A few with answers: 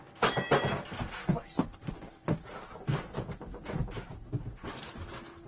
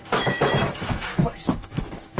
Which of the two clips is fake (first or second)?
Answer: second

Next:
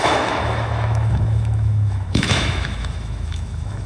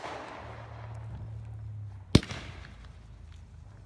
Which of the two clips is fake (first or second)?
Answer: first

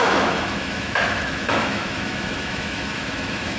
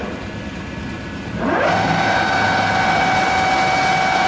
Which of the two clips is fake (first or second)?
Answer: first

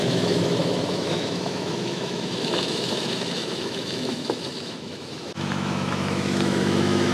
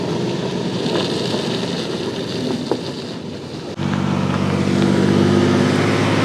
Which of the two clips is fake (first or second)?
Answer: first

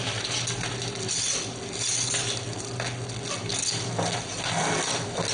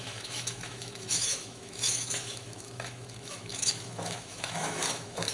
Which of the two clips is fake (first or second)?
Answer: second